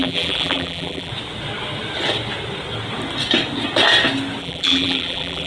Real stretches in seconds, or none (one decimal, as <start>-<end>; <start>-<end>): 1.1-4.4